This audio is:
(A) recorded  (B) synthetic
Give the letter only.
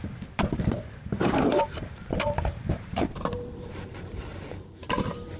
B